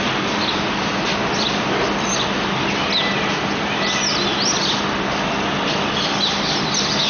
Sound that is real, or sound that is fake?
real